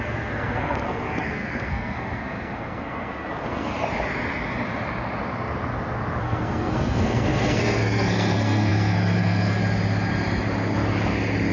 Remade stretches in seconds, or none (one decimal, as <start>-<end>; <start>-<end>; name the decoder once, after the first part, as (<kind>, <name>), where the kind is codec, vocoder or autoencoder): 0.0-3.7 (codec, SNAC); 6.2-9.6